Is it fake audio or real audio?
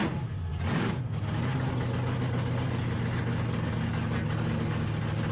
real